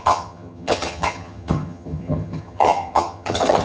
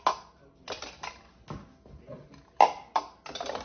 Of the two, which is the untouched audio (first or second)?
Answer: second